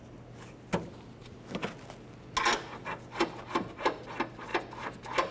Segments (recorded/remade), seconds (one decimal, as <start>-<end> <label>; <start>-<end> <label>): 0.0-5.3 recorded